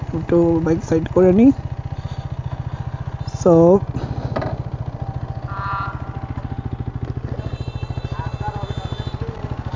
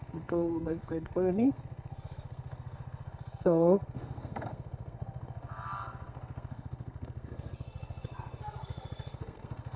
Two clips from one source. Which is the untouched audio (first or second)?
first